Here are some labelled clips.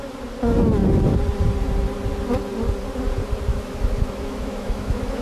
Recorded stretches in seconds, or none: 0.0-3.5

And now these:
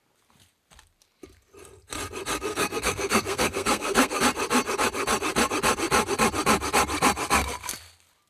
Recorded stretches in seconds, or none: 0.0-2.5; 4.2-8.3

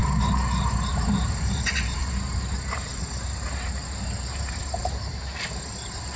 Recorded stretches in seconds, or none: 0.0-0.9

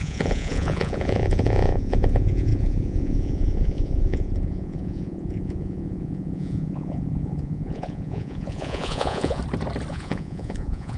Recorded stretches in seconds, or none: 9.4-9.9

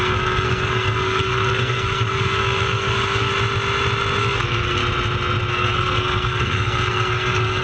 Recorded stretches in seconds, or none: 3.3-4.2; 4.8-5.5

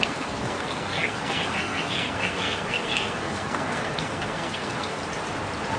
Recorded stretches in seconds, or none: 5.0-5.8

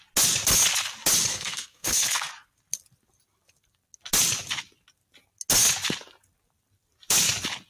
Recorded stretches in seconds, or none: 0.0-1.3; 2.3-7.7